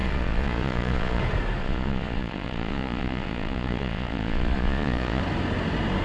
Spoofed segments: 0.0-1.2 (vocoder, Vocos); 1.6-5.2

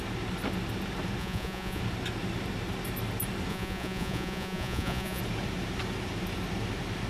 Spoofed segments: 1.2-1.8 (vocoder, Vocos); 3.5-5.2

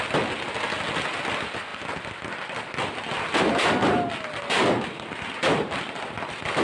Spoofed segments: none

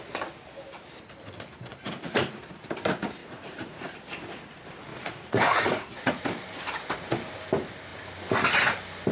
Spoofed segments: 1.7-2.4 (vocoder, Vocos); 3.2-3.9; 4.9-6.2

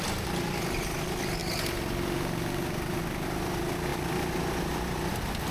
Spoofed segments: none

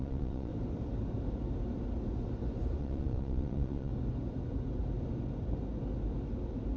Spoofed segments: 0.0-0.5 (vocoder, Vocos); 2.8-3.9